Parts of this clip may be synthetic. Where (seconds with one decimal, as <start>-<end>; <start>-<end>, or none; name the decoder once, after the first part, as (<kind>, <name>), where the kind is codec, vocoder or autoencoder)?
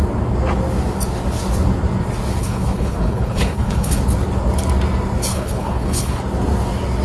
2.4-4.0 (codec, HILCodec); 5.3-6.2